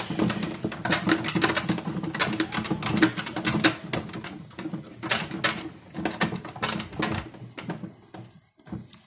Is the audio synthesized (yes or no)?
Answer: no